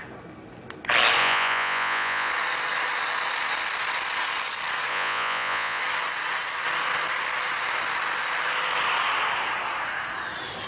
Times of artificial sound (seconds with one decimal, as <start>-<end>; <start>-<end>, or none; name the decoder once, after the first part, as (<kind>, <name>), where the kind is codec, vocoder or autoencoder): 1.2-2.3 (vocoder, Vocos); 4.9-5.8

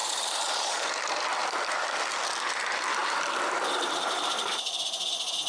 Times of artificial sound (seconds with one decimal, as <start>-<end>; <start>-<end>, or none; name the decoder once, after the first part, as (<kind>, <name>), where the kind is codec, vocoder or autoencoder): 0.0-0.7 (vocoder, BigVGAN v2); 1.4-2.1; 3.0-4.5

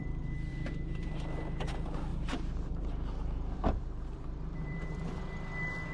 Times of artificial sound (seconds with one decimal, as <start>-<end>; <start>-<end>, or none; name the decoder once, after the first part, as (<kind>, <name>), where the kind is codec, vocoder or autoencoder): 0.5-1.1 (vocoder, BigVGAN v2); 2.1-5.2

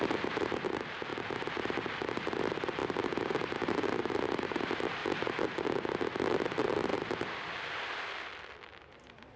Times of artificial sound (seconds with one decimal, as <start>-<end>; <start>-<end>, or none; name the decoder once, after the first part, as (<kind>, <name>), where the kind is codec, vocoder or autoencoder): 0.0-1.1 (vocoder, BigVGAN v2); 2.4-2.8; 4.3-5.0; 6.3-9.4